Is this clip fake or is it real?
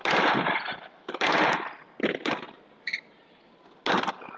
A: real